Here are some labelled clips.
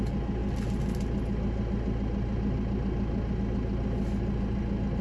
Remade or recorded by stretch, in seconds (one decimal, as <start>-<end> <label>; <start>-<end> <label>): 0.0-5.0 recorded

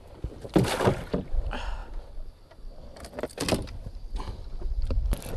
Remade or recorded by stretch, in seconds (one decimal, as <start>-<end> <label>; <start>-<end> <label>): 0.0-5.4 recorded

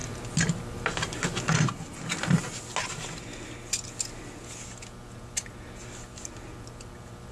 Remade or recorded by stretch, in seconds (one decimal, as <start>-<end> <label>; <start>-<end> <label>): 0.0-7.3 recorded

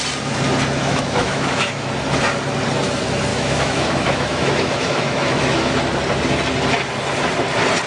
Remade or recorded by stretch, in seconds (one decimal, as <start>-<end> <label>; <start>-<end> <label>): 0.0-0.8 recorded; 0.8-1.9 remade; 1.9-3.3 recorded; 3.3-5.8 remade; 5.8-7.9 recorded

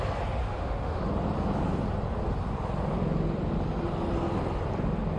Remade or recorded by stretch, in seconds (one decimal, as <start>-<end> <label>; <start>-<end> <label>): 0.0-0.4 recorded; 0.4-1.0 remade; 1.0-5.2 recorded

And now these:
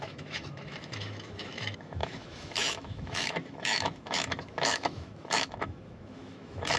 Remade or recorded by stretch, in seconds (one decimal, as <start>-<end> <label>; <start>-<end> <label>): 0.0-6.8 remade

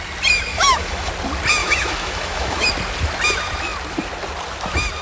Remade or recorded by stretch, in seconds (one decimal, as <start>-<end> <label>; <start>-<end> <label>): 0.0-0.5 recorded; 0.5-1.1 remade; 1.1-1.6 recorded; 1.6-2.7 remade; 2.7-5.0 recorded

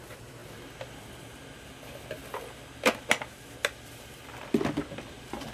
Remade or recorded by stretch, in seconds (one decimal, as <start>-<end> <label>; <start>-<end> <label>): 0.0-5.5 recorded